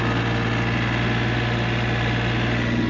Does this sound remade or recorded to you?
recorded